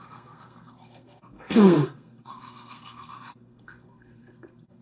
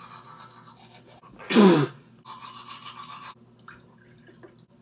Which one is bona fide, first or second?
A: second